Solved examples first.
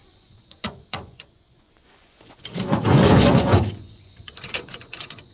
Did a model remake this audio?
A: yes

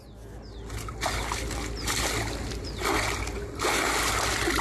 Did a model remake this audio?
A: no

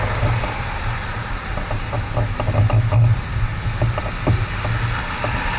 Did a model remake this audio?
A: no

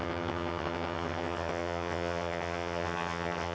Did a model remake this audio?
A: yes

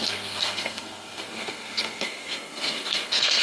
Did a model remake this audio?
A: yes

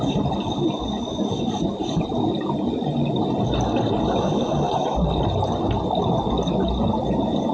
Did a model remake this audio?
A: no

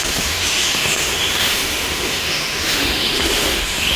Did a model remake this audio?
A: yes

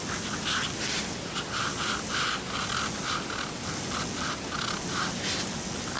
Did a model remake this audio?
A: no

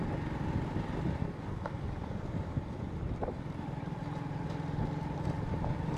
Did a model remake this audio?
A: yes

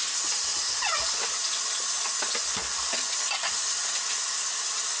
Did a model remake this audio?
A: no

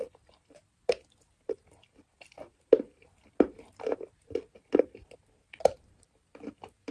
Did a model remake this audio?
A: no